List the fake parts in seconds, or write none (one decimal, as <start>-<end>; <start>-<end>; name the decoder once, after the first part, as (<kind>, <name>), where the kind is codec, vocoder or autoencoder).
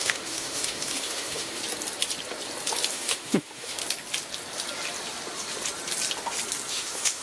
0.0-1.6 (autoencoder, DAC-VAE); 2.9-3.8; 6.7-7.2